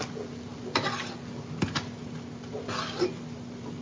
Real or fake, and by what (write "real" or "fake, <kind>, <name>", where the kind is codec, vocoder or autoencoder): real